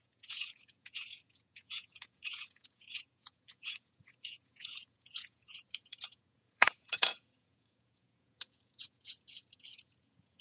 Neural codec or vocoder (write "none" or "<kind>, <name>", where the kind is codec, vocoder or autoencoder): vocoder, Vocos